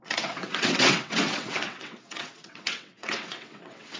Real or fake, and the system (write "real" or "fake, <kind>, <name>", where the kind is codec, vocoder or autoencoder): fake, vocoder, WaveNeXt